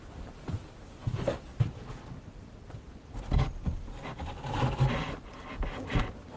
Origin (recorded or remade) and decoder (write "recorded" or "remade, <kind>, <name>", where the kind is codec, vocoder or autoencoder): recorded